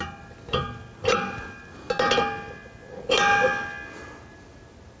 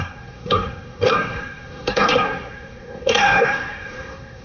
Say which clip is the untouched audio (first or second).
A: first